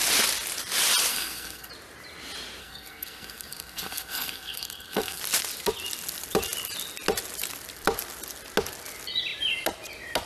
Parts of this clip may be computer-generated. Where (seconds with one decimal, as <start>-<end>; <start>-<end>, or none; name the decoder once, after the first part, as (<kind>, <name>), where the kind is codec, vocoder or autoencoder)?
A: 1.1-1.7 (codec, SNAC); 2.6-5.2